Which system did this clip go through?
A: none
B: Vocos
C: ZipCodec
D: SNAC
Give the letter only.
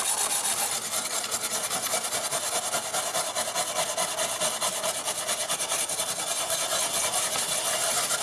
A